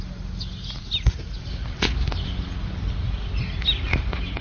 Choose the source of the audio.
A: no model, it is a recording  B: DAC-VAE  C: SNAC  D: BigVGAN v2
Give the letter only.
A